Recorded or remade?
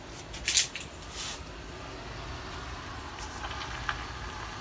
recorded